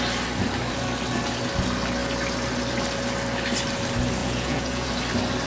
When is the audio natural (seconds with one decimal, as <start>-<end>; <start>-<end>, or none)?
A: 0.0-4.2; 4.9-5.5